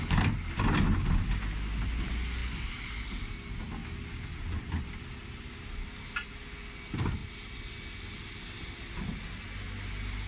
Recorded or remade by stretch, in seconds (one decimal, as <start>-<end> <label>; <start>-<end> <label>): 0.0-10.3 recorded